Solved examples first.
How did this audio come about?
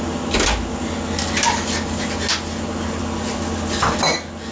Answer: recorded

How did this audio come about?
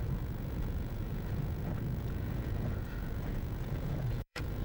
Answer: remade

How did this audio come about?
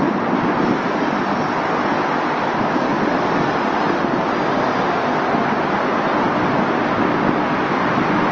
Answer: recorded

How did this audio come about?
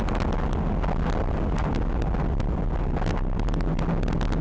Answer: recorded